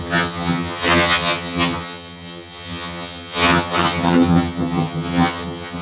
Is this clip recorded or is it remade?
remade